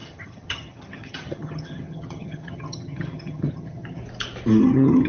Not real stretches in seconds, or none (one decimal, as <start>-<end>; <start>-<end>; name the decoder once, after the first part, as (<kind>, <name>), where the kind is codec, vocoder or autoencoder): 0.0-4.0 (vocoder, HiFi-GAN); 4.6-5.1